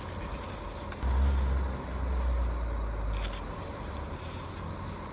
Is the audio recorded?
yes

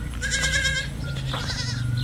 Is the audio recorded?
yes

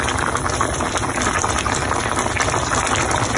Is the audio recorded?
no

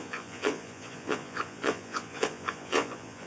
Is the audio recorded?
no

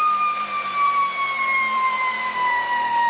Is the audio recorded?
no